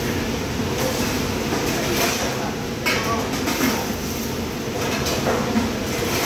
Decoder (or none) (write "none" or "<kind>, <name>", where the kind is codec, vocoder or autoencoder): none